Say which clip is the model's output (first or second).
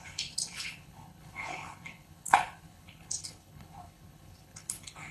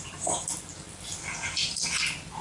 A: first